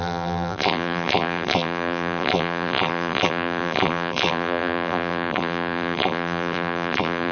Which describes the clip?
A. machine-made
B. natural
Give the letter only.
A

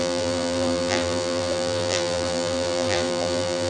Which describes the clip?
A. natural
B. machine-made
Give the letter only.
B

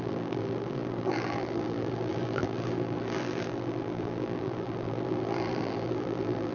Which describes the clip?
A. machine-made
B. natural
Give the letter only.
A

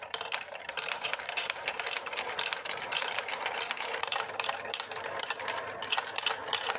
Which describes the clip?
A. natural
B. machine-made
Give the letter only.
B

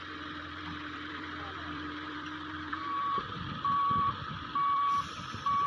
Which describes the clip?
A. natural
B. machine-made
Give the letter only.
B